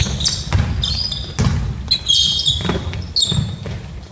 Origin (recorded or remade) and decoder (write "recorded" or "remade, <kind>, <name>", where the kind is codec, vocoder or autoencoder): recorded